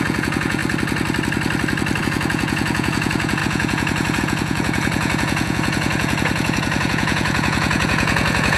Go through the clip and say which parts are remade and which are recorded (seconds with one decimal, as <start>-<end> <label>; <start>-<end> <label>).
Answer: 0.0-0.6 remade; 0.6-2.0 recorded; 2.0-8.6 remade